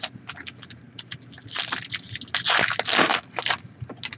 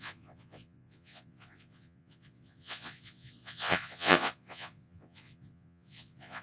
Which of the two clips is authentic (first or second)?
first